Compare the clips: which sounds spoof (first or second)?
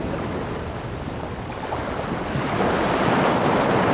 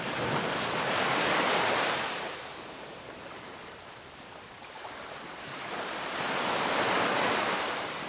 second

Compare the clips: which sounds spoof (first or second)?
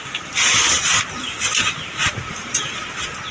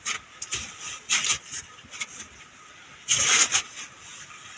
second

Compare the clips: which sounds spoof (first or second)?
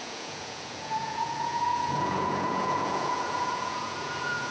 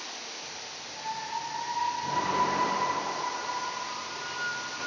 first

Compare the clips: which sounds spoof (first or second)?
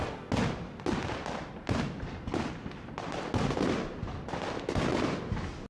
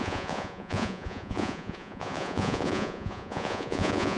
second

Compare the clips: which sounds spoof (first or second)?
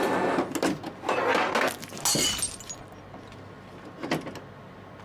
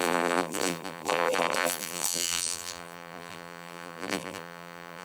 second